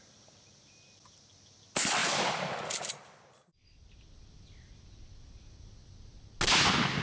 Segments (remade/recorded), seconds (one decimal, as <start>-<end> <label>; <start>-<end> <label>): 0.0-2.0 recorded; 2.0-5.2 remade; 5.2-7.0 recorded